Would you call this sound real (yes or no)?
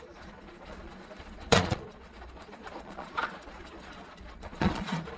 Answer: no